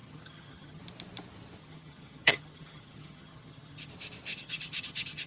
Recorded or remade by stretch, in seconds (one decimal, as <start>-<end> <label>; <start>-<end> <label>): 0.0-0.8 remade; 0.8-1.6 recorded; 1.6-3.9 remade; 3.9-4.3 recorded; 4.3-5.3 remade